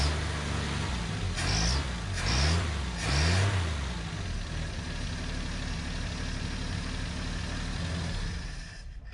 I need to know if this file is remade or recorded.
recorded